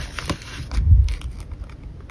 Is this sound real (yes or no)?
yes